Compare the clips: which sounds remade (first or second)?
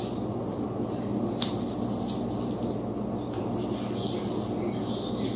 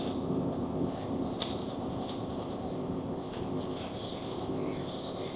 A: second